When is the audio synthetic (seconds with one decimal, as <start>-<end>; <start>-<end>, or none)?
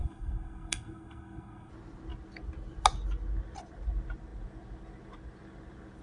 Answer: 0.0-1.7